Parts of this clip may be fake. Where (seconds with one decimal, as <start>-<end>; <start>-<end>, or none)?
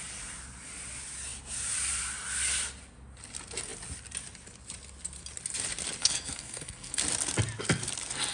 6.0-7.0